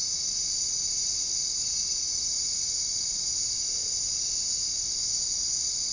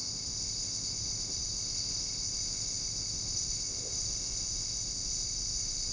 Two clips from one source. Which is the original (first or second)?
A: first